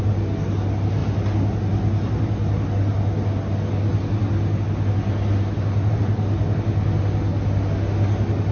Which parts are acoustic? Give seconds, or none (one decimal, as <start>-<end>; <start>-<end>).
0.0-8.5